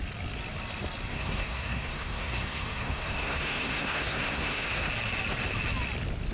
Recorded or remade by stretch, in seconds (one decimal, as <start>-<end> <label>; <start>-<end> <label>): 0.0-1.1 recorded; 1.1-4.9 remade; 4.9-6.3 recorded